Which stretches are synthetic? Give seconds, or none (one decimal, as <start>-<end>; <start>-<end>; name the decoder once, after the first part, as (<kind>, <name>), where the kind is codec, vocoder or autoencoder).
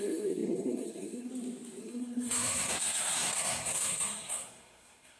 0.0-1.3 (codec, SNAC); 1.8-5.2